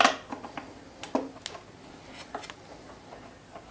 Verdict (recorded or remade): recorded